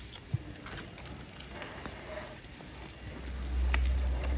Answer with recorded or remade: recorded